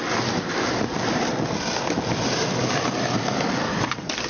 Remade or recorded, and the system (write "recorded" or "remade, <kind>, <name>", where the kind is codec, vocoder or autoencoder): recorded